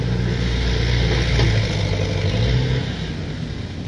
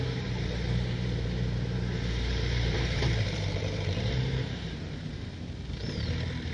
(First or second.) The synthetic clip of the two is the second